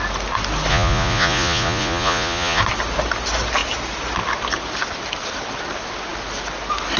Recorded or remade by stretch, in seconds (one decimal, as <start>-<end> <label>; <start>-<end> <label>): 0.0-0.7 recorded; 0.7-2.6 remade; 2.6-7.0 recorded